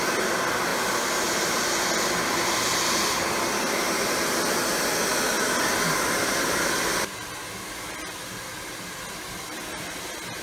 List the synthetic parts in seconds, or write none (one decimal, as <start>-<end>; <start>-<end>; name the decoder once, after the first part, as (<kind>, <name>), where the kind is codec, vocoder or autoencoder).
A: none